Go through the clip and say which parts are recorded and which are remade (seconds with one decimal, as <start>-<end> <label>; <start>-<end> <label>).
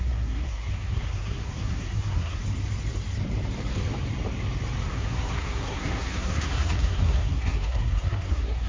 0.0-2.4 remade; 2.4-4.9 recorded; 4.9-8.7 remade